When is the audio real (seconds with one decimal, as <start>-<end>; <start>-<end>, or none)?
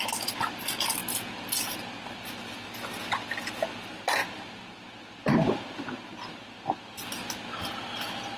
0.0-1.0; 1.8-8.4